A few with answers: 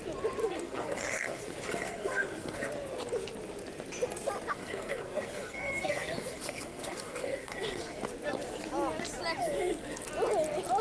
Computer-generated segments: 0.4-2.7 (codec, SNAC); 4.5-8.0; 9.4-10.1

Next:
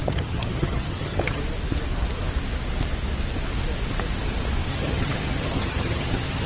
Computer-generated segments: 0.0-1.4 (vocoder, HiFi-GAN); 4.7-6.5

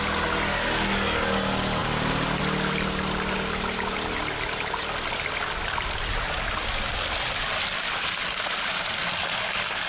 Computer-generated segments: none

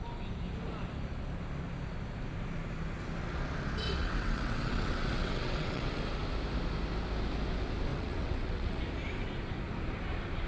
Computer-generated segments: 4.0-6.0 (vocoder, WaveNeXt); 7.9-8.8

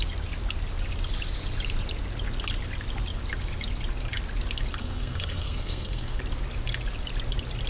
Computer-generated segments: 4.8-6.2 (codec, SNAC)

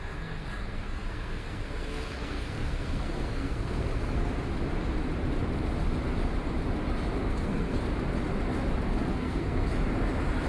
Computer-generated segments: 0.0-4.3 (codec, SNAC); 7.2-7.8; 9.1-9.7

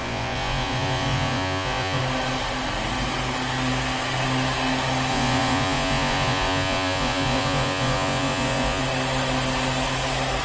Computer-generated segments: 0.0-2.0 (vocoder, Vocos); 5.1-8.8